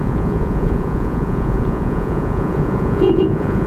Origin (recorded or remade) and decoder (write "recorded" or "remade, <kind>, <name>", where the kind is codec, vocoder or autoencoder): remade, vocoder, Vocos